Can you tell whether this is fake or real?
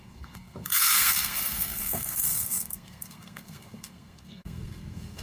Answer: fake